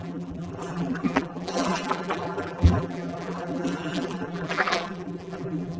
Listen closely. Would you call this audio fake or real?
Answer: fake